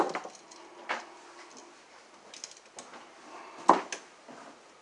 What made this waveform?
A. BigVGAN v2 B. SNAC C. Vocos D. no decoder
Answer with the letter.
D